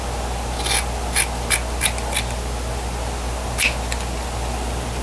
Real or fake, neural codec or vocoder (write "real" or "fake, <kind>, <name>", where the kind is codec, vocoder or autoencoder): real